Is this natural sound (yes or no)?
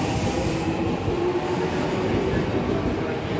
yes